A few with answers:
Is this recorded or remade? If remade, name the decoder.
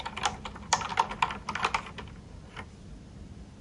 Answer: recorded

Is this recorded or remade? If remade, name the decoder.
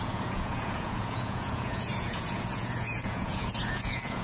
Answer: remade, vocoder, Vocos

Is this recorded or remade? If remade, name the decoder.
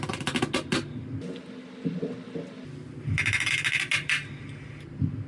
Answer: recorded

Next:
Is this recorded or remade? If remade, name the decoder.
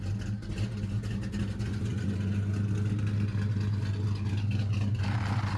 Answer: recorded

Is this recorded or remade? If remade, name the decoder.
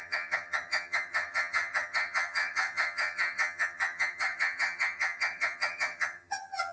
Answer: remade, vocoder, HiFi-GAN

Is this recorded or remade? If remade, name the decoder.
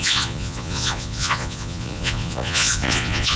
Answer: remade, vocoder, Vocos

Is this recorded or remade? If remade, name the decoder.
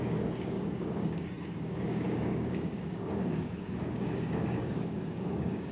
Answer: remade, codec, DAC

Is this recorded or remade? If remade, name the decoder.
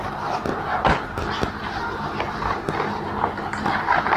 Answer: recorded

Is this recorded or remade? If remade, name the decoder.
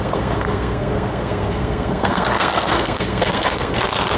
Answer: remade, codec, SNAC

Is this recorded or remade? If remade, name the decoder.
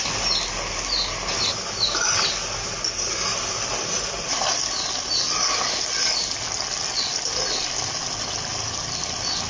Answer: recorded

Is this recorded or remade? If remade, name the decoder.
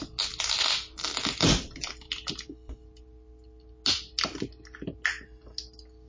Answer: recorded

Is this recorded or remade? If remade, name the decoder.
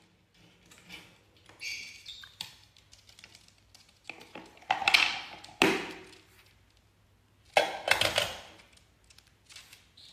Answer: recorded